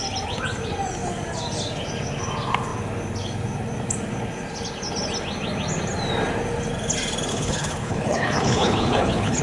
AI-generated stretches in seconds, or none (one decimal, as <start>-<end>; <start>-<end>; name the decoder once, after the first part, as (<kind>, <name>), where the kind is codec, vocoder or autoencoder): 7.3-9.4 (codec, HILCodec)